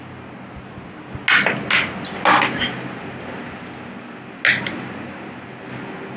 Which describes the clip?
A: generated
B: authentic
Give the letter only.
B